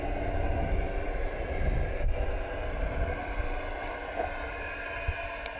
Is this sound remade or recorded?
recorded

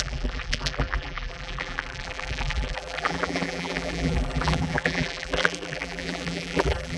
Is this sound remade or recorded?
remade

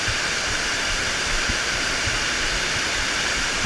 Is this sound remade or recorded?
recorded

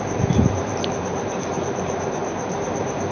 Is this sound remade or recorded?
remade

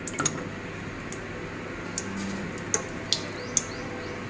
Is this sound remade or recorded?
recorded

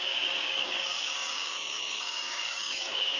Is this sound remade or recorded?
remade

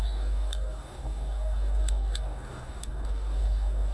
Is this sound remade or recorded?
remade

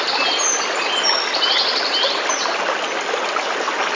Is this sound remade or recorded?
recorded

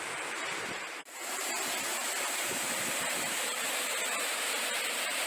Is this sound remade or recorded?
remade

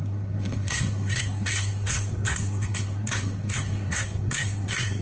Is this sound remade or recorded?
remade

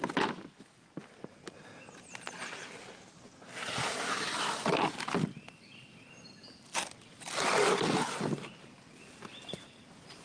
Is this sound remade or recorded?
recorded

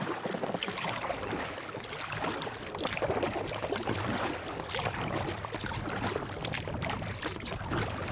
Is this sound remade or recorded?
recorded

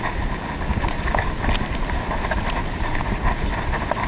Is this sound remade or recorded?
recorded